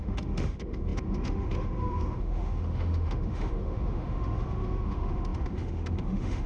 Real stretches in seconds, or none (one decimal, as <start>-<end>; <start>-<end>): none

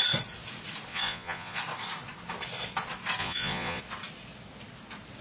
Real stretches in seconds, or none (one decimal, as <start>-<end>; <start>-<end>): 0.0-0.9; 1.6-3.2; 3.8-5.2

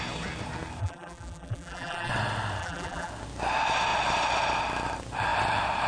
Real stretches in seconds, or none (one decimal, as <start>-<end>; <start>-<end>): 0.0-0.8; 2.1-2.6; 3.1-5.9

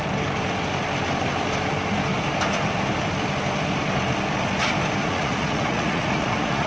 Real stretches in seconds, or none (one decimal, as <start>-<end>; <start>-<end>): 0.0-5.0

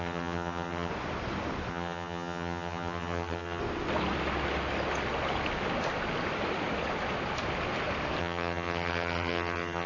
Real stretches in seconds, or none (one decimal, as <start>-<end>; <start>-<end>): 0.9-1.7; 3.6-8.2

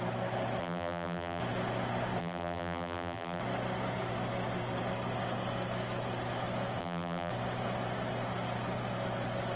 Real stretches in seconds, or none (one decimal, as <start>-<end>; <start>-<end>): 0.0-0.6; 1.4-2.2; 3.4-6.8; 7.3-9.6

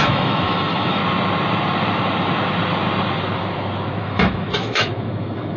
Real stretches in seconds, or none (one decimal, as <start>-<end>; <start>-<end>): 1.0-4.0